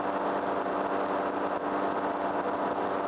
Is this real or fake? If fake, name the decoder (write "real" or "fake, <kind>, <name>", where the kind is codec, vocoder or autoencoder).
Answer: real